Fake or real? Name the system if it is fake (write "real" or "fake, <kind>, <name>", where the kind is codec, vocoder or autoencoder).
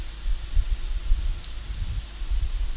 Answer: real